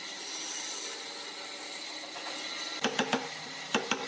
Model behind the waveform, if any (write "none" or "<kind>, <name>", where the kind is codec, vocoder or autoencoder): none